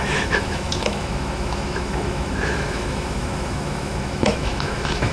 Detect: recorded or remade remade